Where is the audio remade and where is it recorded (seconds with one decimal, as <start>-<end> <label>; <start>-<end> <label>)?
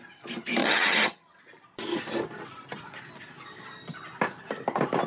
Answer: 0.0-0.6 recorded; 0.6-1.4 remade; 1.4-5.1 recorded